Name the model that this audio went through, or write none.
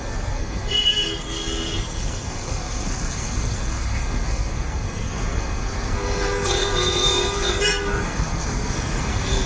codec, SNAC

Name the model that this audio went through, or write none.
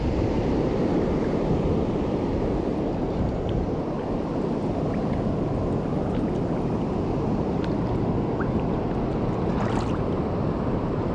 none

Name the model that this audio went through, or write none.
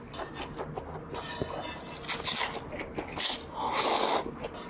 none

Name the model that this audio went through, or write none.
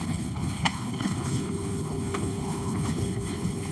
codec, HILCodec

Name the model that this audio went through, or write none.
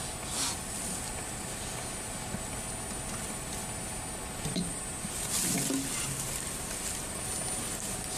none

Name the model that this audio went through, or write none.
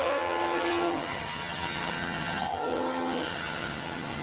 vocoder, HiFi-GAN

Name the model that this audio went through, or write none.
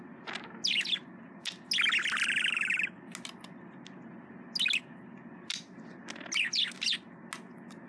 none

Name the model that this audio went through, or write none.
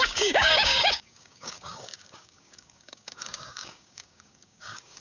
codec, DAC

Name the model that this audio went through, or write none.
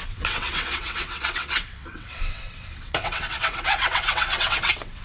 vocoder, WaveNeXt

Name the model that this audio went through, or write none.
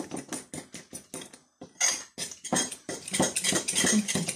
none